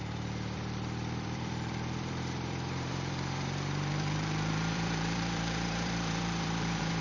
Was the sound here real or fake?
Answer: fake